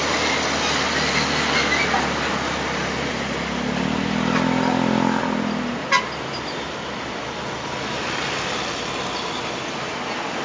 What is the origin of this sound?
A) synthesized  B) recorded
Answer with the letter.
B